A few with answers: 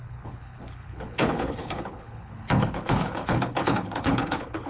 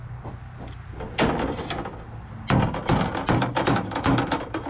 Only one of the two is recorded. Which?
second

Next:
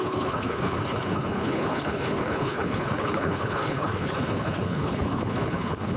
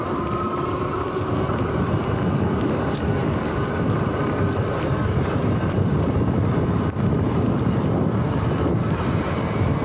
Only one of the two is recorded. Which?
second